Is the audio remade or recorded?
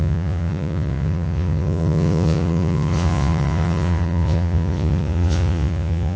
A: remade